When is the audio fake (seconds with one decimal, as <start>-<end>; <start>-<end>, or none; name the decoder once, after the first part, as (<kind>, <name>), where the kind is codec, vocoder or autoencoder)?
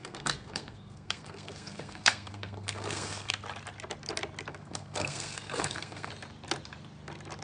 0.0-3.3 (codec, SNAC); 4.5-6.1